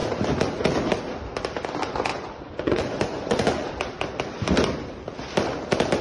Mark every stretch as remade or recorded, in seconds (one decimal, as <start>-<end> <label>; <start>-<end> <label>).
0.0-2.1 recorded; 2.1-3.7 remade; 3.7-6.0 recorded